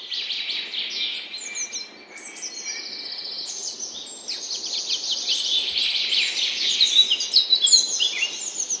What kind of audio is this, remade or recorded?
recorded